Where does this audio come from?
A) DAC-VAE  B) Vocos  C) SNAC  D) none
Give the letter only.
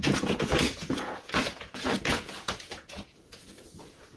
B